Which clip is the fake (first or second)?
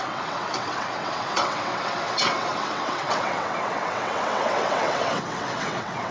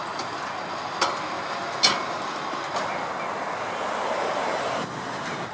first